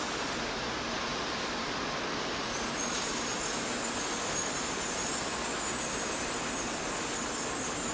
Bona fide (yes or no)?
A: yes